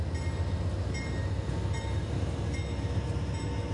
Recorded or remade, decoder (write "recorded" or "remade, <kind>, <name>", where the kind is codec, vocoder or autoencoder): recorded